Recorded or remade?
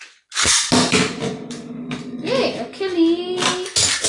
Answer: recorded